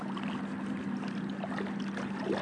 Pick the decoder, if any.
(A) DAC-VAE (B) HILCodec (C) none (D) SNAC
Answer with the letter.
C